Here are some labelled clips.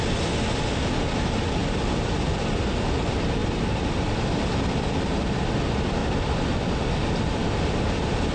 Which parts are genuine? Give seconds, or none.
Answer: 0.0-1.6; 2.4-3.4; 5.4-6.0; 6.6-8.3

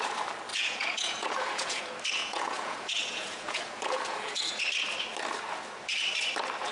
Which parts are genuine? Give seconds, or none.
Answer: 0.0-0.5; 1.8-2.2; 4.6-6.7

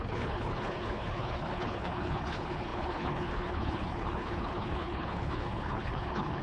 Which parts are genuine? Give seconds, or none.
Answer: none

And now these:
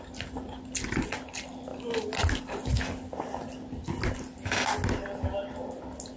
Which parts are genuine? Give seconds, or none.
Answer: 0.0-6.2